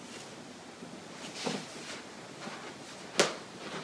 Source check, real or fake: real